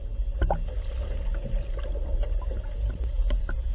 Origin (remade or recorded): recorded